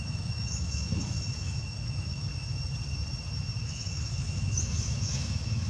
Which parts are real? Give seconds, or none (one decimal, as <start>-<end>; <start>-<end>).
2.3-3.6